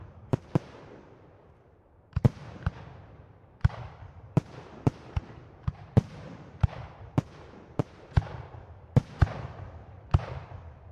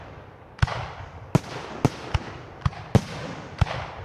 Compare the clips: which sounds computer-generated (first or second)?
first